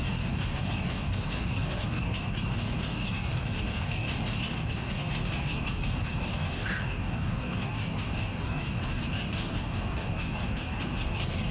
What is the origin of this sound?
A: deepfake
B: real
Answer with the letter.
A